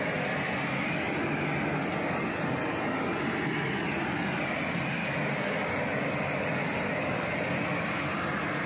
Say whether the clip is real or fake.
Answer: real